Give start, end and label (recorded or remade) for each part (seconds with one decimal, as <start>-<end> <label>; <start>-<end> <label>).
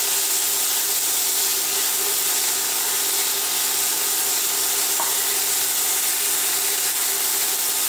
0.0-7.9 recorded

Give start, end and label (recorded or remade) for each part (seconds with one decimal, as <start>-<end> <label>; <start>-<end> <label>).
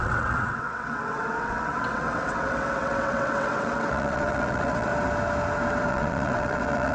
0.0-4.9 remade; 4.9-5.9 recorded; 5.9-6.9 remade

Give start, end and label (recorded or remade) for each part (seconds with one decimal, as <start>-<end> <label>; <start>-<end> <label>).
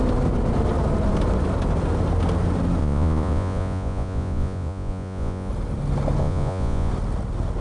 0.0-2.8 recorded; 2.8-5.5 remade; 5.5-6.2 recorded; 6.2-6.9 remade; 6.9-7.6 recorded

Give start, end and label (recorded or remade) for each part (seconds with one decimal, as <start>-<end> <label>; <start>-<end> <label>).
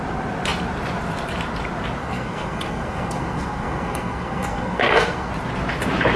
0.0-2.0 recorded; 2.0-5.3 remade; 5.3-6.2 recorded